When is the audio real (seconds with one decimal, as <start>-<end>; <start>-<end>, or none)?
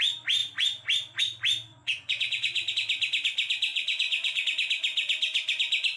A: 0.0-1.7; 2.7-3.7; 4.4-6.0